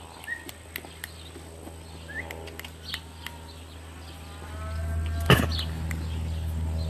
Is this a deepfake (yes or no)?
no